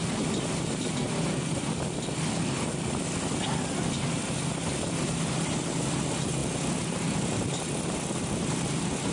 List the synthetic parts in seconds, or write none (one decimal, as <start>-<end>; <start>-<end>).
none